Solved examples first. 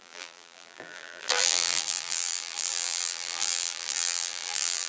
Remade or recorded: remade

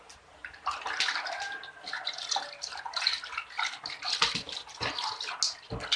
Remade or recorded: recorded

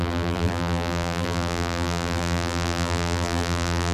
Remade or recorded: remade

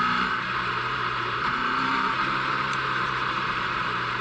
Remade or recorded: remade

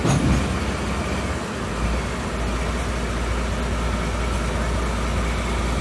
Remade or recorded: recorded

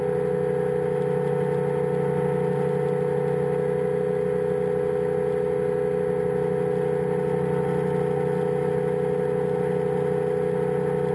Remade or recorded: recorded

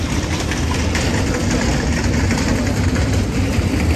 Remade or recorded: remade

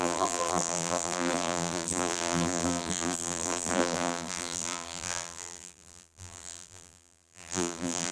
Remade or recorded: remade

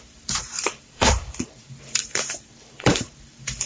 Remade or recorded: remade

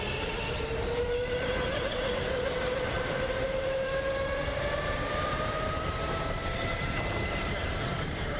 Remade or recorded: remade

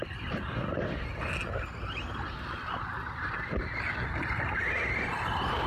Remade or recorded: recorded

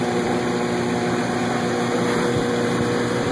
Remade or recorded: remade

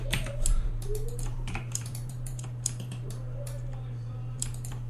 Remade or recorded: remade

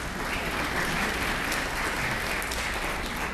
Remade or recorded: recorded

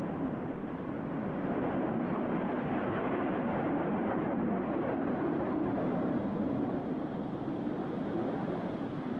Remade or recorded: remade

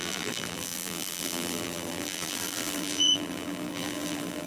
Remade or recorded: remade